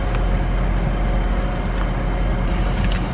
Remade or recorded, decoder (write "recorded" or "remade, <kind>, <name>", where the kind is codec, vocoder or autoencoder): recorded